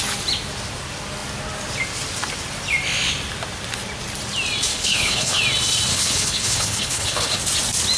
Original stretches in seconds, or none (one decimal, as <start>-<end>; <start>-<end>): 0.0-4.7; 5.4-5.9; 7.4-8.0

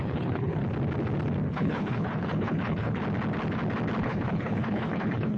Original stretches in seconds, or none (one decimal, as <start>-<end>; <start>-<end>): 0.6-1.5; 3.0-4.0

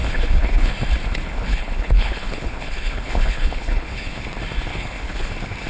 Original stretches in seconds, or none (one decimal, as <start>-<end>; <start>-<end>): 0.7-1.1; 4.2-4.7; 5.3-5.7

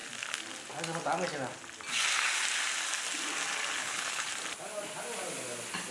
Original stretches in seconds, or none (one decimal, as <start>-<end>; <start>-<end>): 0.0-3.8; 4.3-5.9

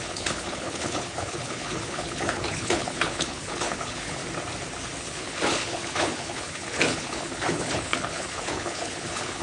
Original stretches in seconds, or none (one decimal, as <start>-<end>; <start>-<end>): 4.2-5.0

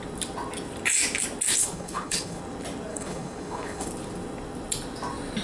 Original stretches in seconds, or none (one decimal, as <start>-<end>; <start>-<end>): 0.0-1.6; 2.4-2.9; 3.9-5.4